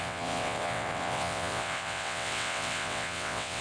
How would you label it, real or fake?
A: fake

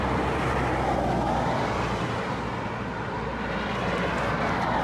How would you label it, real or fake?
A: real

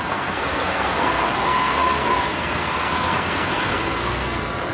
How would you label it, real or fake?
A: fake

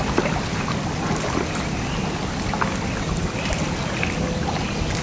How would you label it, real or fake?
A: real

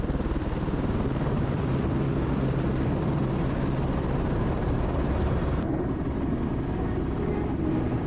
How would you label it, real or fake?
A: fake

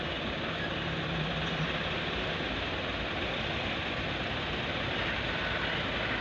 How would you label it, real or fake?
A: real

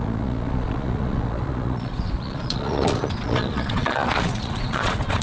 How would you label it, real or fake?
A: fake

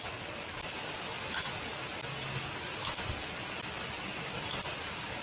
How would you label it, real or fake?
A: real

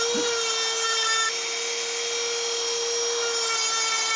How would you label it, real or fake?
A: real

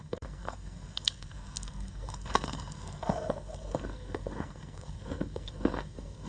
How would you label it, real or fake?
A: fake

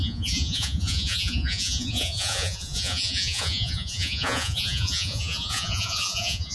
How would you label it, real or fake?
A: fake